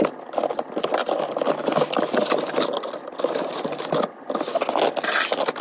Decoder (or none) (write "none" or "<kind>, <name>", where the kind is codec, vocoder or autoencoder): none